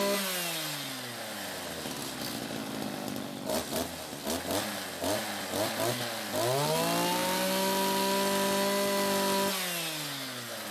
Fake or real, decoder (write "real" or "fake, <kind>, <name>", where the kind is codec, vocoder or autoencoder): real